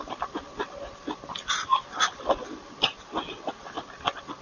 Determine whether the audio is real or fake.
real